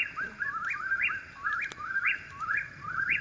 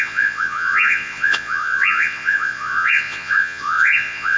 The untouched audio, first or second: first